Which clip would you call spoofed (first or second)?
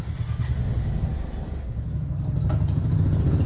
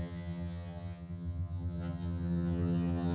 second